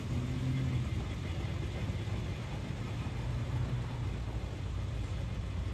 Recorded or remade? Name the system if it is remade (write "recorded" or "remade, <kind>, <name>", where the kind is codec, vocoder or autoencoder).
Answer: recorded